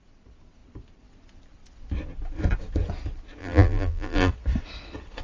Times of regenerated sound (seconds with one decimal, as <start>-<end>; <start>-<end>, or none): 3.4-4.3